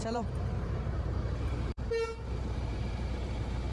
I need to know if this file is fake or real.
fake